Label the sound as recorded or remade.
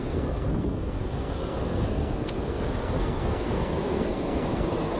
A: remade